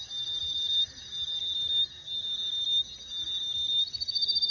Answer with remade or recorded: recorded